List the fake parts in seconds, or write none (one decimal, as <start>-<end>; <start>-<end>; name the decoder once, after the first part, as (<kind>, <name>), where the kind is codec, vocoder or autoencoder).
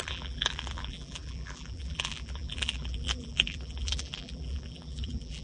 0.0-5.4 (vocoder, BigVGAN v2)